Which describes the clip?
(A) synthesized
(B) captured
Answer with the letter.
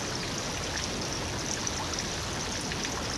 B